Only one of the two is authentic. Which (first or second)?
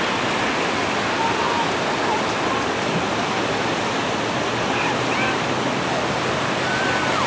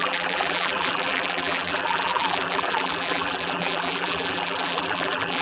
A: first